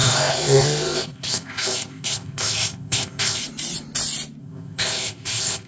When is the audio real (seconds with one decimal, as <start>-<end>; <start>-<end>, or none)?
3.4-4.4